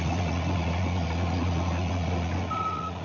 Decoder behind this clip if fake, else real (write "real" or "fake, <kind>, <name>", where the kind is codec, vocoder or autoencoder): fake, vocoder, Vocos